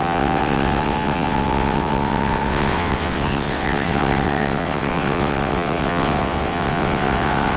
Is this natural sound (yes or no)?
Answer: no